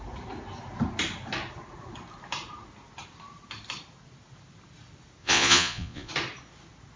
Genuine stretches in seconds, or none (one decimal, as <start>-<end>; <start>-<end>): 0.0-5.2; 6.1-7.0